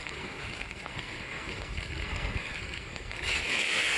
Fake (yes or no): yes